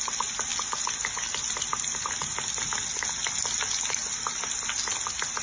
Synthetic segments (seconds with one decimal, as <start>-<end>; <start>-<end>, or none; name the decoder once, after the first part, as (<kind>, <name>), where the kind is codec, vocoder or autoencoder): none